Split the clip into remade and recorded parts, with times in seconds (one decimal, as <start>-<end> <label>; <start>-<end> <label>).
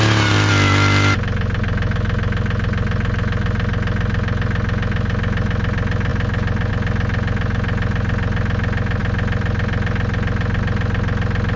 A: 0.0-11.6 recorded